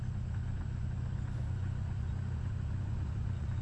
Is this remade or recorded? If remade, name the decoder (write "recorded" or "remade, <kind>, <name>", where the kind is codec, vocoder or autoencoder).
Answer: remade, vocoder, Vocos